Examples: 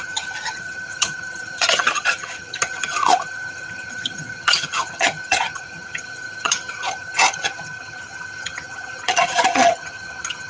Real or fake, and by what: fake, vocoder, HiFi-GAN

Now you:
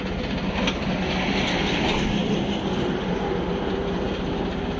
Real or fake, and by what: real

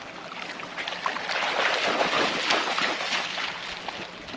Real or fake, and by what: real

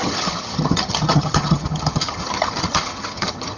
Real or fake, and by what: fake, vocoder, HiFi-GAN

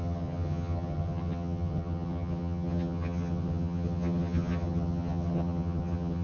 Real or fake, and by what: fake, vocoder, HiFi-GAN